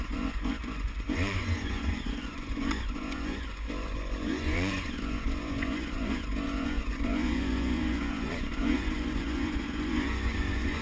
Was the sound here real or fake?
fake